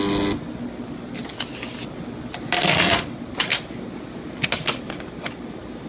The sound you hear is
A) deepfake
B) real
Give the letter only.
B